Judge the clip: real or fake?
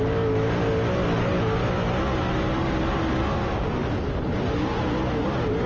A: real